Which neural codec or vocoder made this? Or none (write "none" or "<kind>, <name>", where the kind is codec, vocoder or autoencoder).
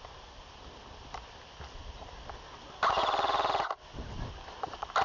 none